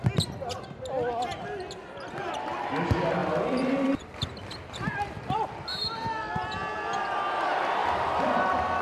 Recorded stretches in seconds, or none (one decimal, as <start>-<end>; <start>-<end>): 0.0-3.2; 6.0-7.8; 8.4-8.8